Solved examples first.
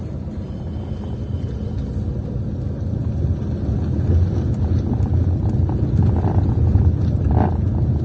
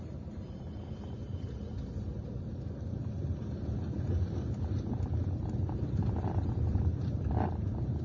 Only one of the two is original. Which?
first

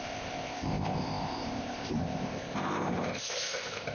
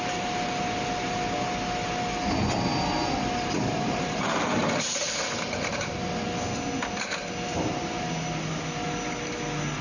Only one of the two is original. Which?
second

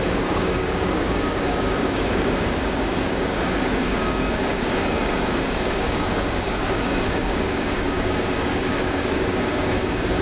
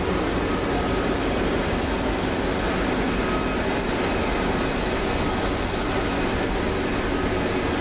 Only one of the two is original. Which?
second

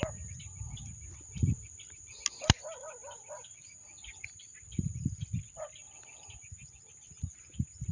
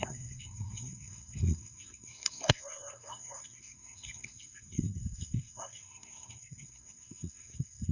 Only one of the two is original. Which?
first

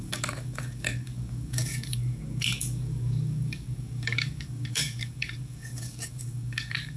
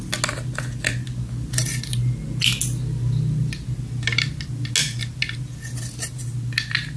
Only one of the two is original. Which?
second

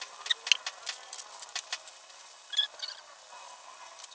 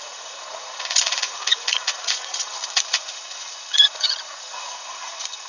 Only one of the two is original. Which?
first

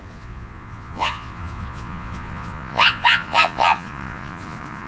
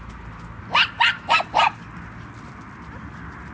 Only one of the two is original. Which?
second